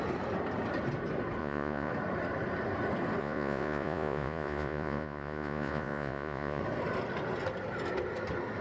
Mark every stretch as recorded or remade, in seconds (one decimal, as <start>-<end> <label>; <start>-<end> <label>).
0.0-1.4 recorded; 1.4-1.9 remade; 1.9-3.2 recorded; 3.2-6.6 remade; 6.6-8.6 recorded